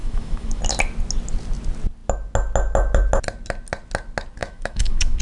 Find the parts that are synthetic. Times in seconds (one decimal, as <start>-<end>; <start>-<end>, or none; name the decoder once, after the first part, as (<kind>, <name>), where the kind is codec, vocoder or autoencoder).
0.0-0.6 (autoencoder, DAC-VAE); 4.4-5.2